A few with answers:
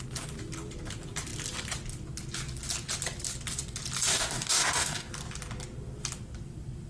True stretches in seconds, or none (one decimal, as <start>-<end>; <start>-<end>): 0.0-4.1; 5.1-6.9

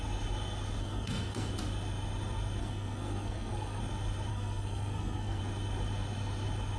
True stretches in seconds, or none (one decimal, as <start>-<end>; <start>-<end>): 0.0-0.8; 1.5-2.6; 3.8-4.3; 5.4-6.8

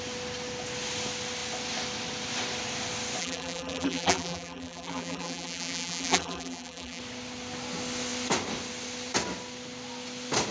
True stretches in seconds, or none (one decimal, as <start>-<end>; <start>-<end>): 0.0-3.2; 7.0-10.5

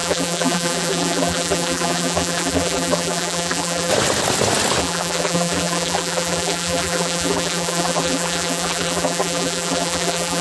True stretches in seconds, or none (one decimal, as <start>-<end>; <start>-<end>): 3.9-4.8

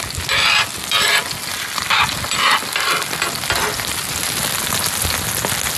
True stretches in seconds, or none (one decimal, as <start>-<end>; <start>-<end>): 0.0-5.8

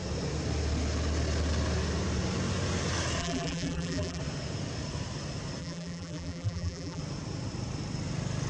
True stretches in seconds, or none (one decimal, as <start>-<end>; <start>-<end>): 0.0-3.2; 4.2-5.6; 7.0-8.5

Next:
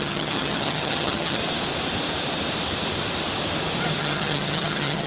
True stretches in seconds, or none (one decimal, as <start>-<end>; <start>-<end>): 1.4-4.0

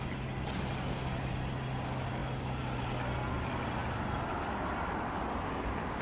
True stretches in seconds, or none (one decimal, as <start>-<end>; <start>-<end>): 0.0-6.0